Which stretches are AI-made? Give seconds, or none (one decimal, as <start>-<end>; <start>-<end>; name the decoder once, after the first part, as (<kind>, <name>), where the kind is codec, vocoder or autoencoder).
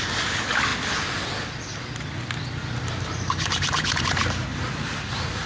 0.7-4.0 (vocoder, BigVGAN v2)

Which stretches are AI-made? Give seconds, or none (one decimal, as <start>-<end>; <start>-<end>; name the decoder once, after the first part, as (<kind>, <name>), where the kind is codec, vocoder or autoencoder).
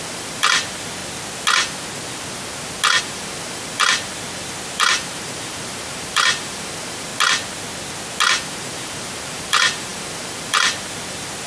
0.0-1.0 (vocoder, BigVGAN v2); 3.0-7.1; 8.5-11.5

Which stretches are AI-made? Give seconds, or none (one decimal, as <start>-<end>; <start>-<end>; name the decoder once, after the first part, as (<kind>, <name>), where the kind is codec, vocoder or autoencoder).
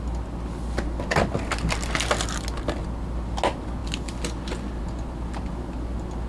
none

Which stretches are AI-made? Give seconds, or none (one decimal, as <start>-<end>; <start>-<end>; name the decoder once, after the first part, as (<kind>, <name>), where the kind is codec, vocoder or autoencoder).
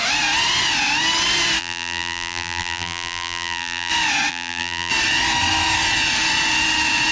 1.6-3.9 (vocoder, BigVGAN v2); 4.3-4.9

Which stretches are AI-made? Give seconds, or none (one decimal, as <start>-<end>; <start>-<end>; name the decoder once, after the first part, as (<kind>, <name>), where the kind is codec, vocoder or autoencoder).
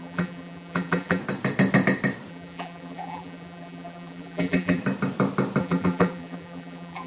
0.0-1.2 (vocoder, BigVGAN v2); 2.3-4.8; 5.6-7.1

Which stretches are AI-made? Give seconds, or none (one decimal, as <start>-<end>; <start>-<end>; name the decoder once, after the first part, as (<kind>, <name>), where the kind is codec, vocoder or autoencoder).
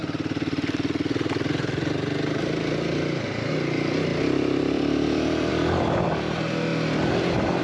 4.1-5.5 (vocoder, BigVGAN v2)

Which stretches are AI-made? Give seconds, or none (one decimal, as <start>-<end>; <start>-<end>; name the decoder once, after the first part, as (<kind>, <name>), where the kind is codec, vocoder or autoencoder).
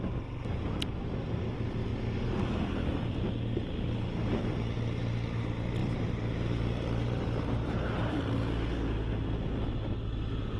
5.8-10.6 (vocoder, BigVGAN v2)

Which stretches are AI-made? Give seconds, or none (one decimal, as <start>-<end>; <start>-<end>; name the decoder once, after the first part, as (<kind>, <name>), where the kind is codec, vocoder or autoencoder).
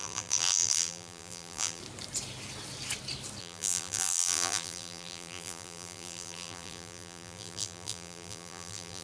0.0-1.8 (vocoder, BigVGAN v2); 3.4-9.0